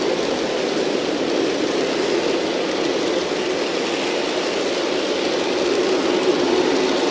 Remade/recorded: recorded